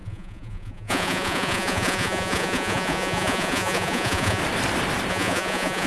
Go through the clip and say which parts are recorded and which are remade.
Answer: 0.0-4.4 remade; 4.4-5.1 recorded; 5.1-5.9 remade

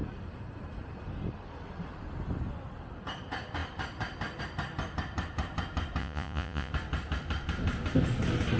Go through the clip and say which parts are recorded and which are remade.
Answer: 0.0-6.0 recorded; 6.0-6.7 remade; 6.7-8.6 recorded

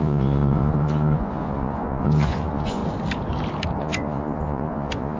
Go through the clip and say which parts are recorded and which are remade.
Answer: 0.0-2.8 remade; 2.8-3.8 recorded; 3.8-5.2 remade

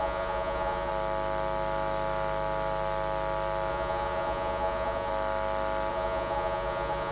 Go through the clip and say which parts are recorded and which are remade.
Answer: 0.0-0.9 remade; 0.9-3.7 recorded; 3.7-5.1 remade; 5.1-5.9 recorded; 5.9-7.1 remade

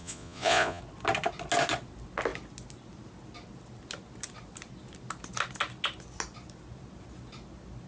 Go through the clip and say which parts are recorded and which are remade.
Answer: 0.0-0.8 remade; 0.8-7.9 recorded

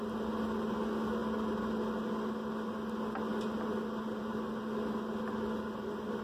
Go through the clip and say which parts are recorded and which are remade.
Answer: 0.0-6.2 recorded

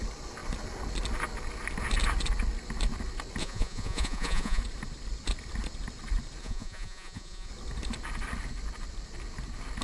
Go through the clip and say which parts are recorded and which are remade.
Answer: 0.0-3.4 recorded; 3.4-4.6 remade; 4.6-6.4 recorded; 6.4-7.5 remade; 7.5-9.8 recorded

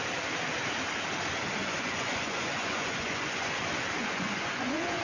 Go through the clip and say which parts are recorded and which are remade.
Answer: 0.0-1.6 recorded; 1.6-3.5 remade; 3.5-4.0 recorded; 4.0-5.0 remade